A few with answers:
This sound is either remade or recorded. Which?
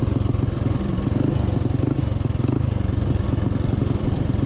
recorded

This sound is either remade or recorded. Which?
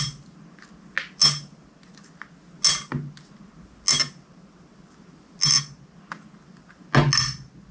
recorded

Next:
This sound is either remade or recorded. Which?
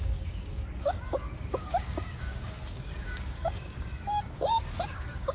remade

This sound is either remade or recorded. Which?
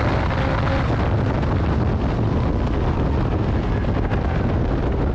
recorded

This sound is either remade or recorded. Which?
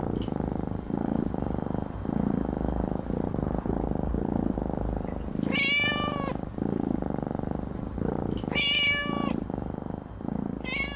recorded